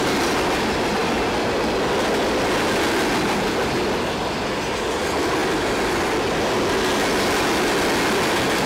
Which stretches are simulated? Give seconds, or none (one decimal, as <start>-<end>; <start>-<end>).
none